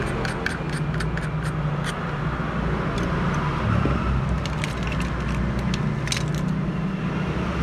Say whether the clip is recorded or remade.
recorded